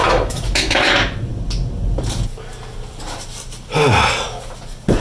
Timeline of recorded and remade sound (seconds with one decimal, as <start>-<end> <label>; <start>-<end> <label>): 0.0-0.9 remade; 0.9-5.0 recorded